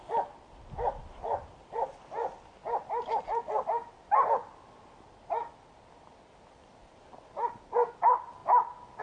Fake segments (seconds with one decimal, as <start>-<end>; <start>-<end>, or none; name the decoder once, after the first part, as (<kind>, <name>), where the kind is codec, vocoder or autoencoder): none